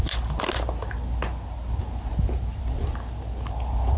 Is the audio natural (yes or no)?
yes